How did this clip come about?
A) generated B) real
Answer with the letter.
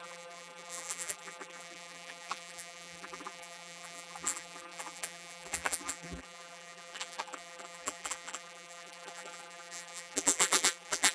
A